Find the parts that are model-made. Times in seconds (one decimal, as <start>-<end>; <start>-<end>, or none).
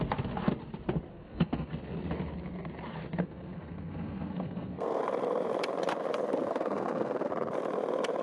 1.1-1.7; 3.2-5.0; 6.5-7.3